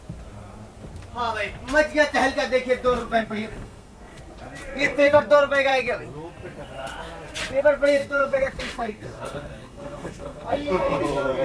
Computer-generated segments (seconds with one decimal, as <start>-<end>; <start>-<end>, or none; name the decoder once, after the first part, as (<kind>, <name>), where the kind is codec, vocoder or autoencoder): 3.0-4.2 (codec, SNAC); 4.7-5.2; 8.0-11.0